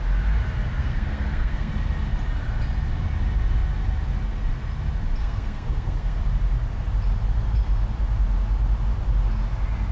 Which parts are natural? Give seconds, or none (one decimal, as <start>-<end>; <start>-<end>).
0.0-0.8; 1.7-5.2; 6.2-9.9